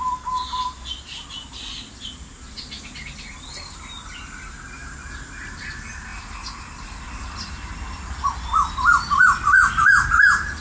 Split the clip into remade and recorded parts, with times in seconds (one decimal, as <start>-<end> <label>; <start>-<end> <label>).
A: 0.0-10.6 recorded